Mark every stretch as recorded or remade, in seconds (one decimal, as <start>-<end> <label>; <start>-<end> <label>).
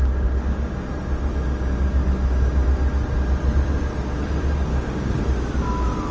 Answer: 0.0-4.7 recorded; 4.7-5.2 remade; 5.2-6.1 recorded